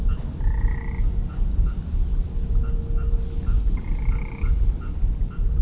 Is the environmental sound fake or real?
real